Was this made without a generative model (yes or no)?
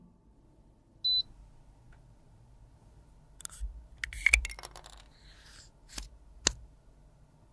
yes